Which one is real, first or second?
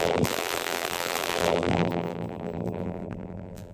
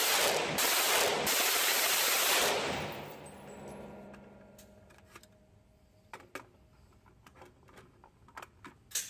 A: second